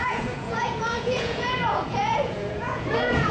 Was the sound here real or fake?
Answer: fake